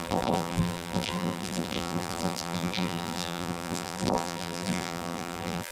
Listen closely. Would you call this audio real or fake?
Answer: fake